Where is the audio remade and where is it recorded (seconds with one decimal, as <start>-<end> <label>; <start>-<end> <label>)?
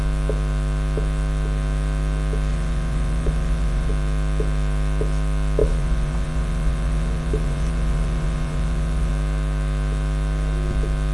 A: 0.0-2.5 recorded; 2.5-3.9 remade; 3.9-5.6 recorded; 5.6-9.1 remade; 9.1-11.1 recorded